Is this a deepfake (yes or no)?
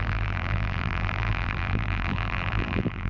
yes